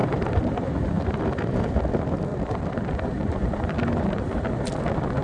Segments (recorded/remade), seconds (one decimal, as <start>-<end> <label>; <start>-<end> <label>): 0.0-1.1 remade; 1.1-2.3 recorded; 2.3-4.6 remade; 4.6-5.2 recorded